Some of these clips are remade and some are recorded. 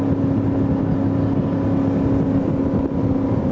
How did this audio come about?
recorded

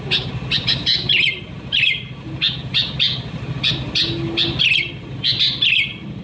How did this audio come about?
recorded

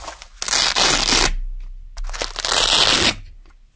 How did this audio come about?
recorded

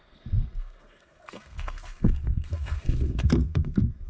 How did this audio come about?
remade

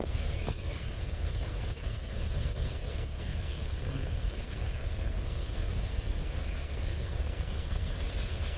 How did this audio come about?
remade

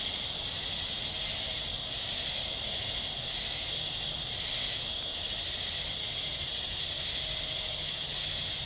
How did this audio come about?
recorded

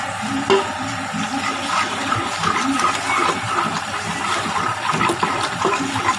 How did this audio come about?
remade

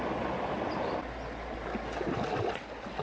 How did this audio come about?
recorded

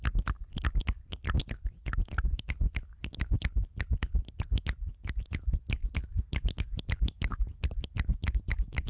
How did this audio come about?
recorded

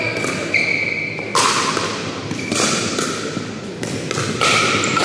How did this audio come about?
recorded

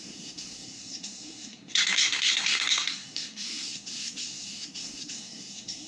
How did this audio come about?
remade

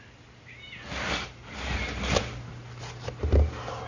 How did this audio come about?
recorded